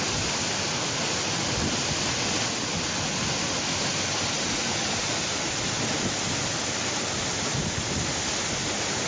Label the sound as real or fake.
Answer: real